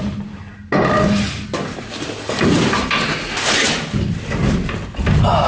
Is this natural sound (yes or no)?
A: yes